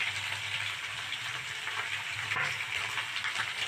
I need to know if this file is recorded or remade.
remade